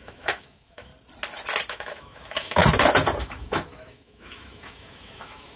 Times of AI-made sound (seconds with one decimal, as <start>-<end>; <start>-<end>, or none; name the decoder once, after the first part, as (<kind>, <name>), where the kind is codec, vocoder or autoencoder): 0.0-0.9 (autoencoder, DAC-VAE); 1.7-2.6; 3.2-5.6